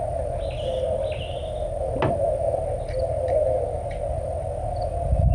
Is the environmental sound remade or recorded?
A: recorded